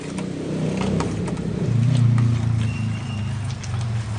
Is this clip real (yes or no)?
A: yes